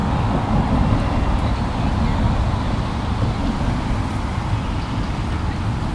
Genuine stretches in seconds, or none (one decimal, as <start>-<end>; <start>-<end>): 0.0-5.9